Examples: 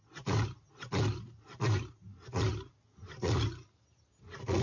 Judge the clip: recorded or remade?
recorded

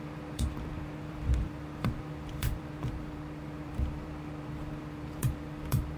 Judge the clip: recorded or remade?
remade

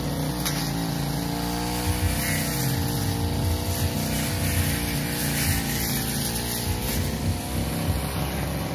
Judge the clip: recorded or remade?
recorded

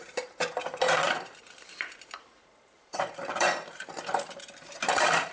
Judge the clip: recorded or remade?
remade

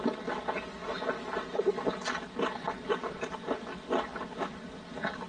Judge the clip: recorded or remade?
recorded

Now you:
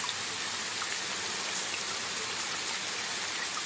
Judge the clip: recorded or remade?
recorded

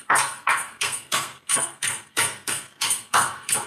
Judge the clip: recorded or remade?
remade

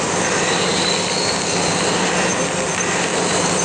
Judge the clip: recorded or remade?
recorded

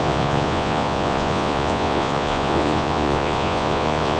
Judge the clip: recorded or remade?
remade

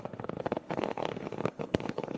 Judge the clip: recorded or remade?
remade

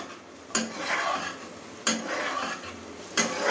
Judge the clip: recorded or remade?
recorded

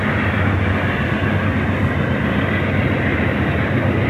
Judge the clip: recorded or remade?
recorded